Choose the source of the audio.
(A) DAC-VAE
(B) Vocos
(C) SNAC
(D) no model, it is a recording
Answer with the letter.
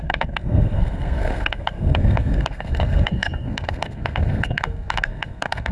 C